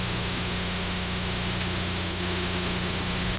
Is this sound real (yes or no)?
no